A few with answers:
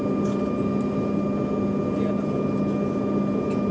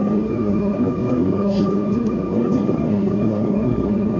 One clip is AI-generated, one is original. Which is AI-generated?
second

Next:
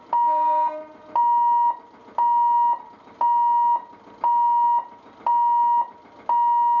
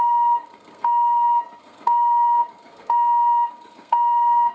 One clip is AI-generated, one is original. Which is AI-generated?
second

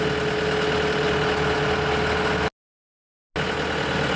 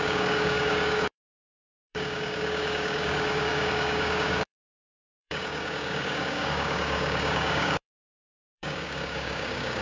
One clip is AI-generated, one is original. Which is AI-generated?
second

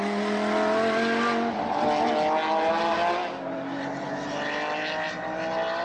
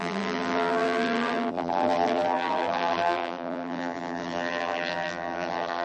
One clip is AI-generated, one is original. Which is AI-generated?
second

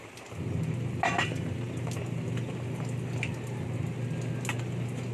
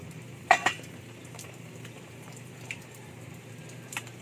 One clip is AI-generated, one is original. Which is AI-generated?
second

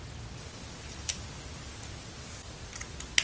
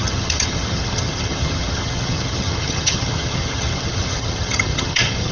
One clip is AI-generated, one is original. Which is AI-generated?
second